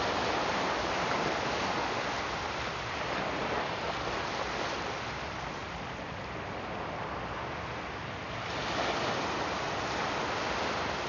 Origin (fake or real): real